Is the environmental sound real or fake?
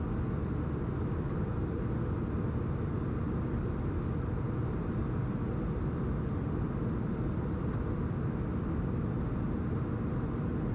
real